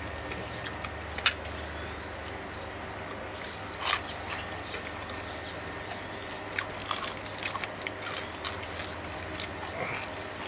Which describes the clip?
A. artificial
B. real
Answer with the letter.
B